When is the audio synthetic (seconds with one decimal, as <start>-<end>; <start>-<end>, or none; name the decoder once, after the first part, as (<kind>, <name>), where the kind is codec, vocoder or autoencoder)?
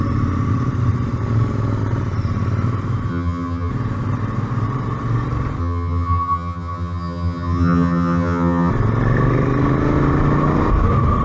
3.1-3.7 (vocoder, HiFi-GAN); 5.6-8.7